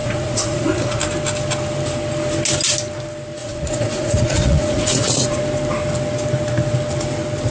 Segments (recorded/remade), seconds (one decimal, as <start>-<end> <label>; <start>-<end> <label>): 0.0-1.0 remade; 1.0-3.4 recorded; 3.4-5.4 remade; 5.4-7.5 recorded